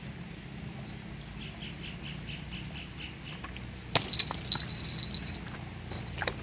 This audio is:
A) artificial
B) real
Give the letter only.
B